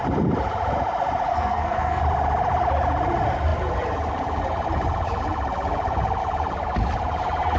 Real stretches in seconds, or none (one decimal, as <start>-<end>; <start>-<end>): 0.0-1.3; 2.0-7.6